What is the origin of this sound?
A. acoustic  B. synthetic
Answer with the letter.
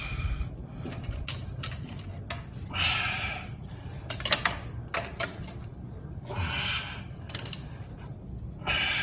A